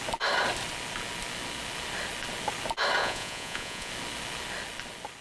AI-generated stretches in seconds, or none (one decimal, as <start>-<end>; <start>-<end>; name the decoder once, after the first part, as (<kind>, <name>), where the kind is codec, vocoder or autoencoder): 3.0-3.9 (vocoder, Vocos)